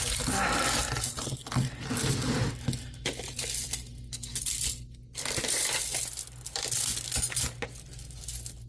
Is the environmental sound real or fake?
real